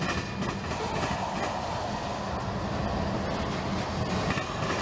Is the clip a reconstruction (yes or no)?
no